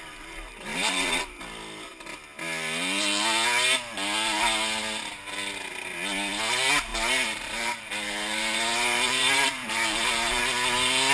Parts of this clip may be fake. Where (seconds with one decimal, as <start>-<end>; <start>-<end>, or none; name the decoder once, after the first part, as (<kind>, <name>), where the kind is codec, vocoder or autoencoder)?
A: 0.7-1.4 (vocoder, BigVGAN v2); 6.9-10.4